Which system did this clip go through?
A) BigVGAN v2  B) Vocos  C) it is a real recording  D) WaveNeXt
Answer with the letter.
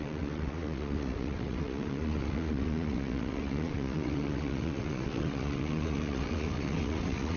D